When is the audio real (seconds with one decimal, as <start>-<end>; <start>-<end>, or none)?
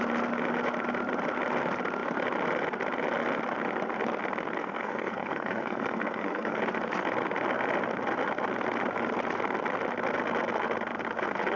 0.0-4.6; 6.6-11.6